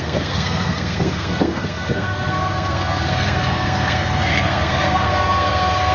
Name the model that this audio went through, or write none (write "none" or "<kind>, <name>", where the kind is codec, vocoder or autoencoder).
codec, SNAC